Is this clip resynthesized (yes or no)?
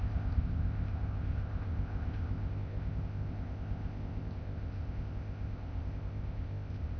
yes